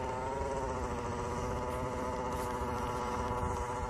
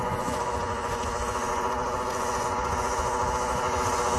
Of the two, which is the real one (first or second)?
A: first